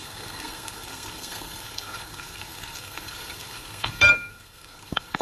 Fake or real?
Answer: fake